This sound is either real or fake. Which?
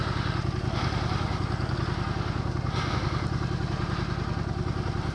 real